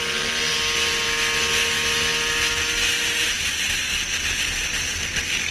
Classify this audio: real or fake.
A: real